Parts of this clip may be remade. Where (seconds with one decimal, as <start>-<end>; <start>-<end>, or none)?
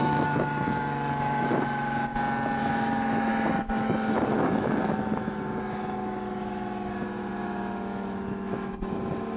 0.0-2.1; 2.6-9.4